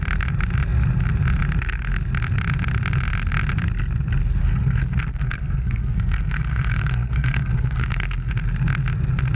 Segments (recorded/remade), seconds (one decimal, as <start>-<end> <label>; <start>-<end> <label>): 0.0-4.4 recorded; 4.4-8.3 remade; 8.3-9.3 recorded